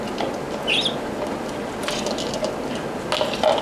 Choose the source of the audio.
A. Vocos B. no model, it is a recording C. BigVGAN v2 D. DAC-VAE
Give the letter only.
B